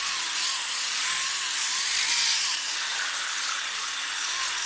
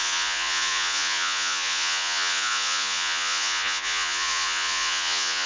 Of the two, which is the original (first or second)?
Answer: first